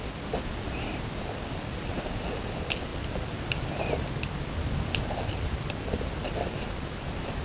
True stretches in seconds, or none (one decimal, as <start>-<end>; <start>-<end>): 0.0-7.4